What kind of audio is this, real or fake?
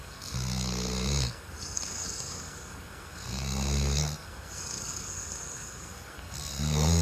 fake